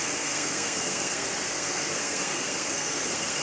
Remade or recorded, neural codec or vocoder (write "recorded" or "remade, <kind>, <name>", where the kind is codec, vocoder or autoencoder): remade, codec, SNAC